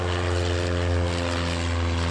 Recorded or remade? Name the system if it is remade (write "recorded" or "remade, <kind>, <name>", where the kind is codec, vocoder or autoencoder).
recorded